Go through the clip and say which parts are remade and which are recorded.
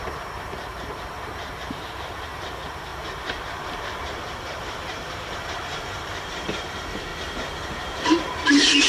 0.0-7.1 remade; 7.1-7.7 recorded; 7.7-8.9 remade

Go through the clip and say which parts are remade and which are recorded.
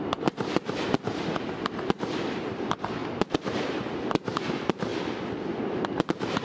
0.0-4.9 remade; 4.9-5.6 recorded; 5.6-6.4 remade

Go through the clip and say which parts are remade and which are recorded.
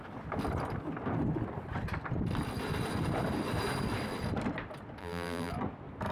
0.0-5.0 recorded; 5.0-5.5 remade; 5.5-6.1 recorded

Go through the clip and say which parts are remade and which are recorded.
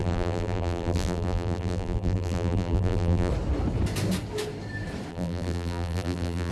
0.0-3.3 remade; 3.3-5.1 recorded; 5.1-6.5 remade